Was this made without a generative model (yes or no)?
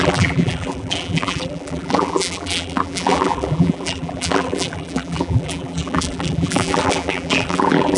no